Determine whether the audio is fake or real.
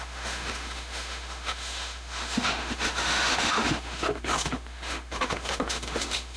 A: fake